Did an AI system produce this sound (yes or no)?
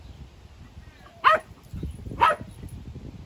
no